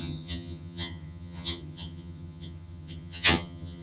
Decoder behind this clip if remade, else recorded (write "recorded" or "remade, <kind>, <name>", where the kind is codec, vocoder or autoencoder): remade, vocoder, HiFi-GAN